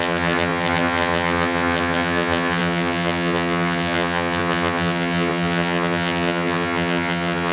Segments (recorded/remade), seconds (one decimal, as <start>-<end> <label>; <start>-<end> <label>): 0.0-7.5 remade